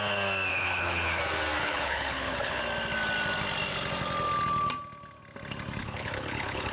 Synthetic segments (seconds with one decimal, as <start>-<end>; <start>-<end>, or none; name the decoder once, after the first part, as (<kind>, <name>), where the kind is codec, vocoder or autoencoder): 0.5-1.2 (codec, HILCodec); 1.6-2.6; 5.8-6.7